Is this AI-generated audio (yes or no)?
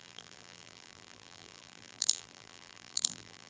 yes